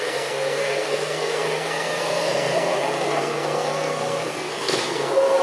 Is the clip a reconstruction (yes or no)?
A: yes